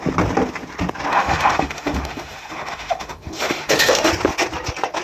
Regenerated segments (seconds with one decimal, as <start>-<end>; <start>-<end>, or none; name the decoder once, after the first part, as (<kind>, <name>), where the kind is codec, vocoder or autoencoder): 1.1-4.1 (autoencoder, DAC-VAE)